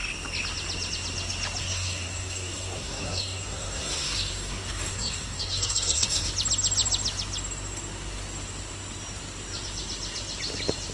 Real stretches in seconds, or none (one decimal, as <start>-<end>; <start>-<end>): 0.0-1.6; 6.3-10.9

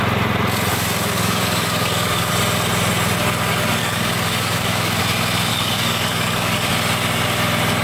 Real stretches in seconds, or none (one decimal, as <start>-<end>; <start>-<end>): 0.0-0.7; 2.3-3.8; 5.0-5.5; 6.7-7.8

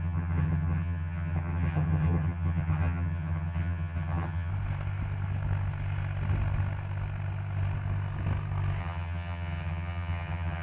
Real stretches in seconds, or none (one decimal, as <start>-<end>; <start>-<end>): 4.5-8.8

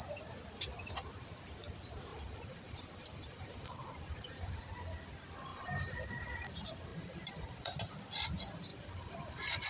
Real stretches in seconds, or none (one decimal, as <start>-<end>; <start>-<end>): 0.0-2.1; 4.6-5.5; 6.1-6.9; 7.8-8.7

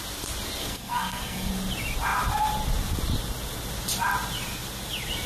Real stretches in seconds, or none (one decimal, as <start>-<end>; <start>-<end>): 0.0-0.6; 1.5-5.3

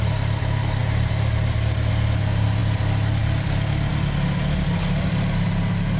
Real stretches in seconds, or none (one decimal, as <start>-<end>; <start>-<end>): 0.0-6.0